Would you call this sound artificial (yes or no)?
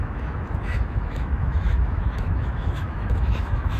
yes